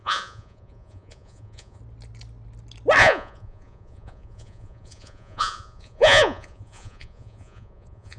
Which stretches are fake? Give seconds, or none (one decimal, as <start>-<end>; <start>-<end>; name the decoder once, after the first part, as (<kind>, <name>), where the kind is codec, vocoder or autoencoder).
0.0-1.8 (vocoder, Vocos); 3.0-8.2